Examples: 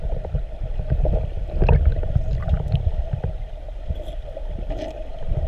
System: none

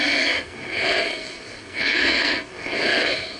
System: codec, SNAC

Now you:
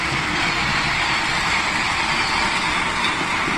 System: vocoder, BigVGAN v2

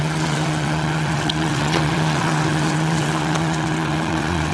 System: vocoder, WaveNeXt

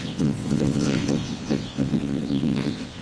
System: vocoder, WaveNeXt